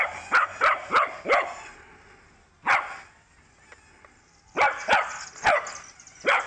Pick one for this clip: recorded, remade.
recorded